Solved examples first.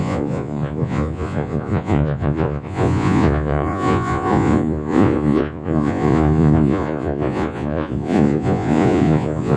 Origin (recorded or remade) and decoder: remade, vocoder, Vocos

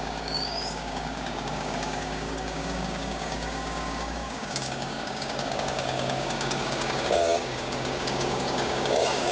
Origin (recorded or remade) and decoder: remade, codec, DAC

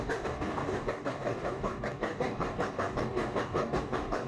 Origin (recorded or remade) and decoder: remade, codec, DAC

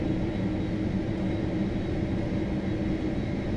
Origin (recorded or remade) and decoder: recorded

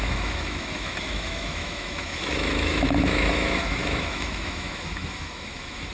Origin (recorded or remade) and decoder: remade, autoencoder, DAC-VAE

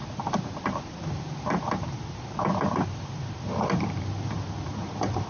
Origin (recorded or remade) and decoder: remade, vocoder, BigVGAN v2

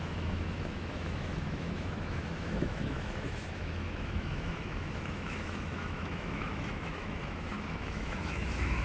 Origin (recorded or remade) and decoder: remade, autoencoder, DAC-VAE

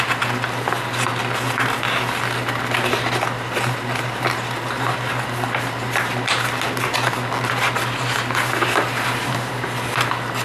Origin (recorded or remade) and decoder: recorded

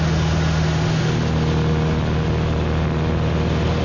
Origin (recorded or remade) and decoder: recorded